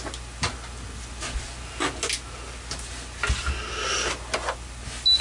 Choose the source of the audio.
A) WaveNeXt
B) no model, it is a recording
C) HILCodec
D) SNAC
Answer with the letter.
B